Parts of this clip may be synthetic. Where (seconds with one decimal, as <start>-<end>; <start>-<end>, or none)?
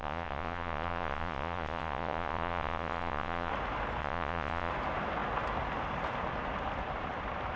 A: 0.0-3.5; 4.0-4.7